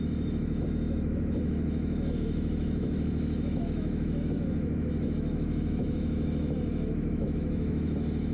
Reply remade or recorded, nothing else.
remade